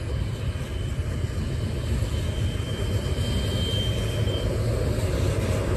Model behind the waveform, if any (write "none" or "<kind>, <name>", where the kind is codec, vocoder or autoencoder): none